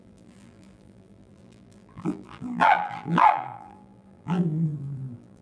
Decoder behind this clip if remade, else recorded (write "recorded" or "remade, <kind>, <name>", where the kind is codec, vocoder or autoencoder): remade, vocoder, BigVGAN v2